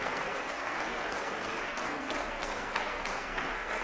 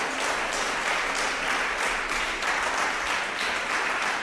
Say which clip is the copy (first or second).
first